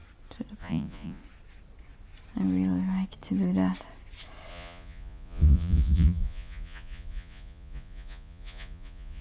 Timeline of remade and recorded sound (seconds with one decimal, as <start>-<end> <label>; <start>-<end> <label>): 0.0-0.6 recorded; 0.6-1.2 remade; 1.2-4.5 recorded; 4.5-9.2 remade